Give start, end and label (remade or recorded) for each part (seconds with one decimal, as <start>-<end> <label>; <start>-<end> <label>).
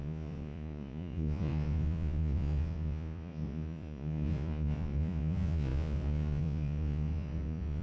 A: 0.0-7.8 remade